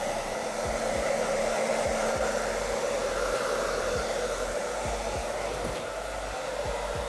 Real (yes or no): no